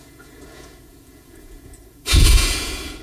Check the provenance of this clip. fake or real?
fake